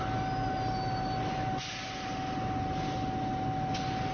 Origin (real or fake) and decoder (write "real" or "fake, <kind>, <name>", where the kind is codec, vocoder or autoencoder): real